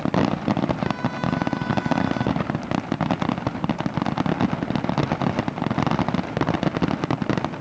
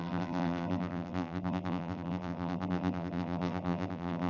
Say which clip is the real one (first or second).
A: first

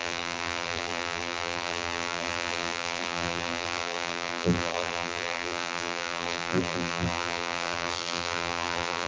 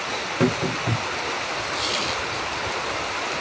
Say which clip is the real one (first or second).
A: second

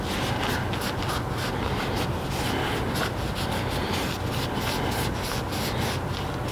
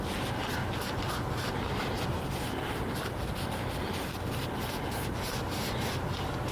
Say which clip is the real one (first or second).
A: first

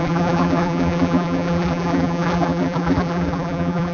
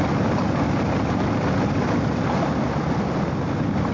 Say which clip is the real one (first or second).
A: second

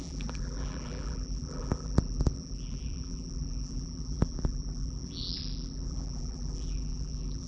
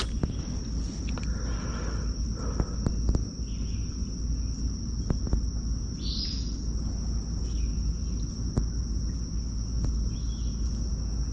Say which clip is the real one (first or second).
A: second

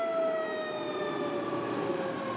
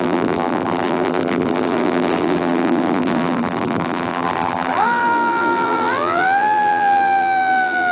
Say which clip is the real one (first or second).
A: first